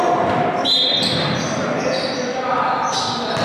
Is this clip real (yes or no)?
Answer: yes